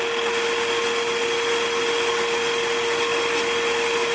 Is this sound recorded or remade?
recorded